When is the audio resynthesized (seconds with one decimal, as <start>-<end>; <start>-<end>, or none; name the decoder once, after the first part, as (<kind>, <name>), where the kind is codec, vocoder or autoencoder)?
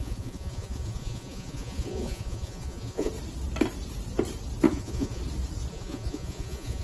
0.0-3.1 (vocoder, Vocos); 4.7-5.2; 5.7-6.8